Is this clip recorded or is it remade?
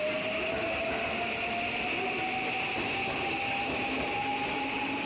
recorded